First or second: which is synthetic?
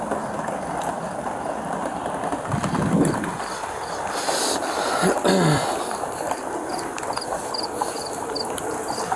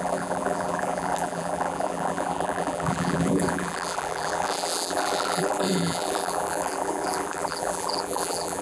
second